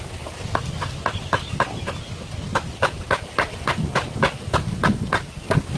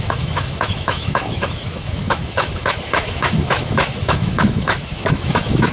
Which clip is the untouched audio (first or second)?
first